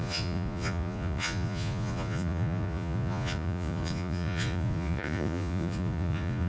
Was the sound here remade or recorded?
remade